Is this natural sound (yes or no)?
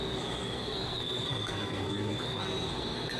no